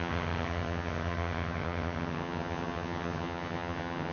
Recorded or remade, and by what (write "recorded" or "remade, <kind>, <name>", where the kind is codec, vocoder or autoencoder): remade, vocoder, HiFi-GAN